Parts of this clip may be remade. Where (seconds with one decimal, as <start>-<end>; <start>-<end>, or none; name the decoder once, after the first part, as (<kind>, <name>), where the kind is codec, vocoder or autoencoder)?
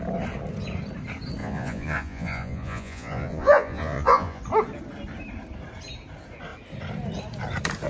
1.4-4.4 (vocoder, Vocos)